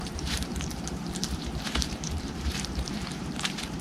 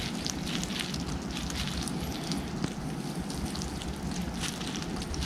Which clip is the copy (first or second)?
first